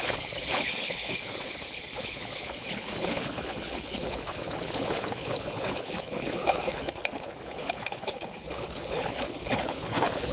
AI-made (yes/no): yes